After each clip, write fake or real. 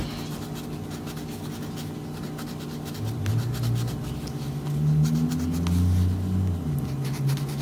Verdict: real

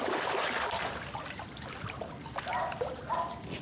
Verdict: real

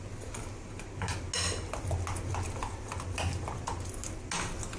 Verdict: real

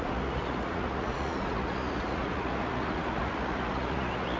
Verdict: fake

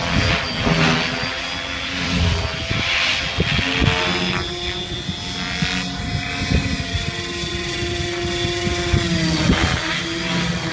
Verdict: real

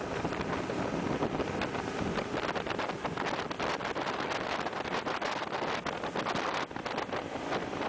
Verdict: fake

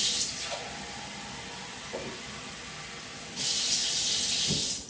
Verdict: real